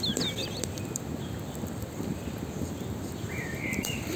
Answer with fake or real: real